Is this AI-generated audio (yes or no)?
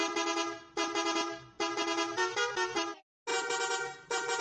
no